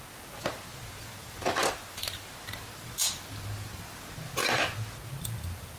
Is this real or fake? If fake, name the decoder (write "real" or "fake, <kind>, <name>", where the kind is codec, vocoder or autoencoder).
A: real